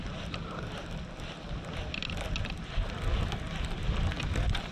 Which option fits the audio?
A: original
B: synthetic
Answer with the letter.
A